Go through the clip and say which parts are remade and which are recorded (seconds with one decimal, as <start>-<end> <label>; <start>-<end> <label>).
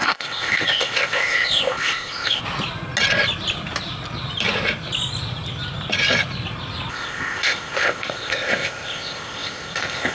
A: 0.0-2.4 remade; 2.4-6.9 recorded; 6.9-10.1 remade